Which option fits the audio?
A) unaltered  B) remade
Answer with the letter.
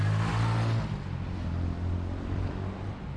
A